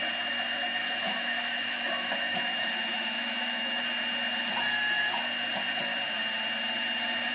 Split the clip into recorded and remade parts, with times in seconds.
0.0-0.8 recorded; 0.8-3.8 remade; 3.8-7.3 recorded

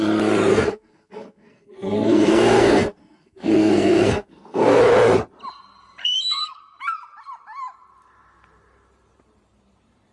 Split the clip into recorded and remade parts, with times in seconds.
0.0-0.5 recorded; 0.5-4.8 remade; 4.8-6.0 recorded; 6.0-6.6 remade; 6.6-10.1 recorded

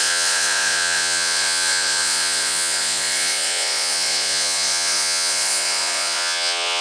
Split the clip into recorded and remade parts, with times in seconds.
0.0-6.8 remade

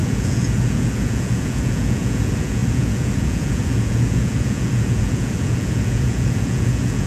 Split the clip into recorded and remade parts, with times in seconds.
0.0-7.1 remade

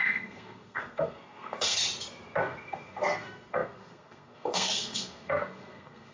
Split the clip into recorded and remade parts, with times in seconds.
0.0-1.8 remade; 1.8-2.4 recorded; 2.4-6.1 remade

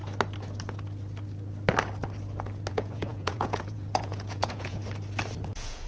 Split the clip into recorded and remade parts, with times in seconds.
0.0-2.7 recorded; 2.7-4.8 remade; 4.8-5.5 recorded; 5.5-5.9 remade

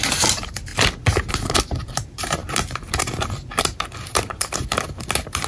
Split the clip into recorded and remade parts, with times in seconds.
0.0-0.7 remade; 0.7-1.3 recorded; 1.3-5.5 remade